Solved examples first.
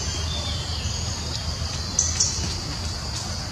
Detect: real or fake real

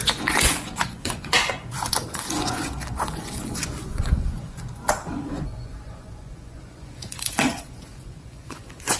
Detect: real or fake fake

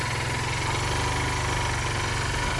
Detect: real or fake real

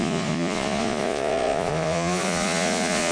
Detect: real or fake fake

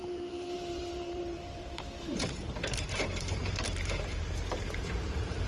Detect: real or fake fake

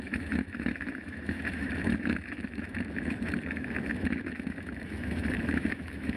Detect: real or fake fake